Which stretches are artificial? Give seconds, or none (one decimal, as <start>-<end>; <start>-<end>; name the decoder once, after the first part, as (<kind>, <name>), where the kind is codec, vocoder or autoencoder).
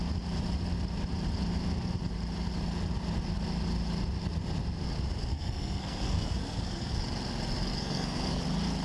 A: 5.3-7.0 (codec, SNAC); 7.7-8.4